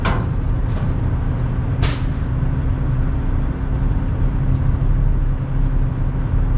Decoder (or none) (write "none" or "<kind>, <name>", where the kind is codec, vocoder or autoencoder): none